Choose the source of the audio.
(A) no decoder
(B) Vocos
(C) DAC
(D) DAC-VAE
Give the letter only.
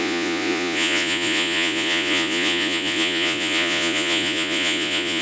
B